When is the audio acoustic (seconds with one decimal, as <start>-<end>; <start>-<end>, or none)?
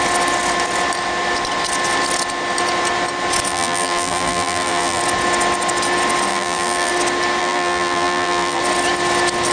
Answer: 0.0-3.5; 5.0-6.3; 6.9-7.4; 8.6-9.5